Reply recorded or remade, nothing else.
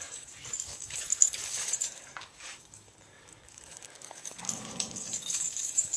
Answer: remade